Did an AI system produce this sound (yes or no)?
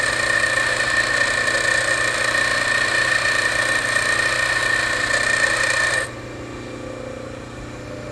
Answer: no